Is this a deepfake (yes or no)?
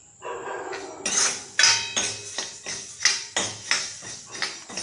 no